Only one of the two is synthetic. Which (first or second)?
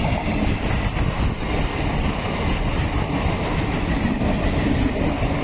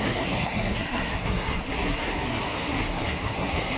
second